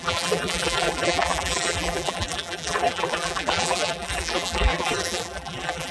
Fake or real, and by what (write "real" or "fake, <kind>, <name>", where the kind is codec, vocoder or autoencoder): fake, vocoder, BigVGAN v2